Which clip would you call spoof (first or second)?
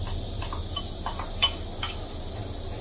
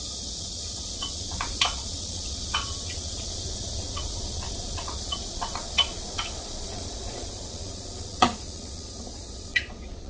second